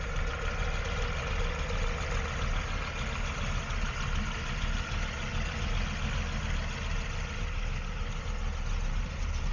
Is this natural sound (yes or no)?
yes